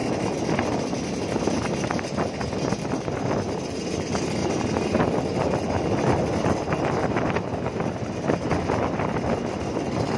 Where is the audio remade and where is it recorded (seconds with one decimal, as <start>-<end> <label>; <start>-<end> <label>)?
0.0-10.2 recorded